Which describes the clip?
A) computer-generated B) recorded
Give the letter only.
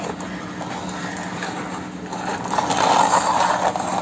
B